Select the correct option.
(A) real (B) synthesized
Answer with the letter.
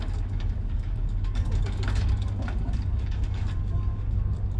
B